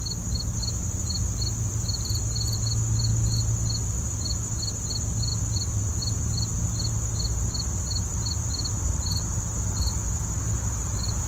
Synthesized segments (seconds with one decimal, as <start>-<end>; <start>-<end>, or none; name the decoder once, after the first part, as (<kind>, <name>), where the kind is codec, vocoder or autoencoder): none